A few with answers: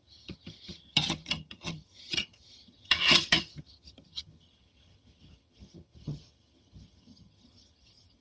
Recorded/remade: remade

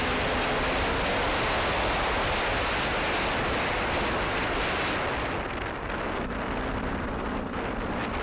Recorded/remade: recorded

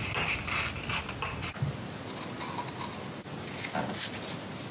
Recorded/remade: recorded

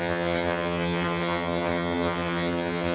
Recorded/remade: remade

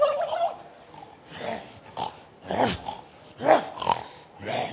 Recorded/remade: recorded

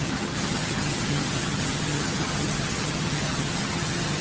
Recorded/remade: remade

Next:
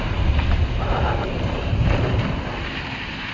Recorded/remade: recorded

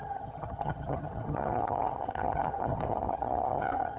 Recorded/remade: remade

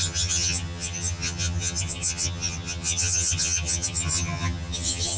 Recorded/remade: remade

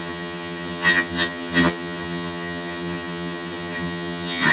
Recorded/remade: remade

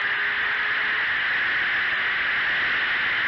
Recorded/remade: recorded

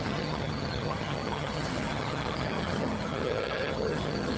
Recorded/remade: remade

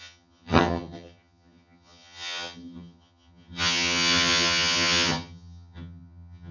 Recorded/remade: remade